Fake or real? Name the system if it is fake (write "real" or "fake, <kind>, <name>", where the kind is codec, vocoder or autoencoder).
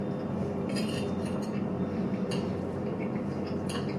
real